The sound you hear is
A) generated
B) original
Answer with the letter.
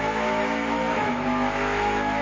A